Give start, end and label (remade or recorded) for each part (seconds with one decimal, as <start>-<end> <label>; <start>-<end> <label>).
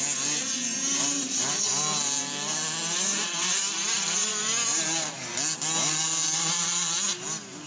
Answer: 0.0-7.7 recorded